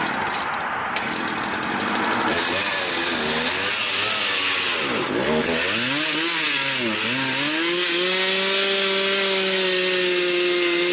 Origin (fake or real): real